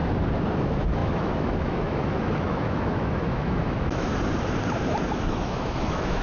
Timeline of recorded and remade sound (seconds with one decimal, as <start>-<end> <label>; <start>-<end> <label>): 0.0-0.6 recorded; 0.6-4.1 remade; 4.1-5.2 recorded; 5.2-6.2 remade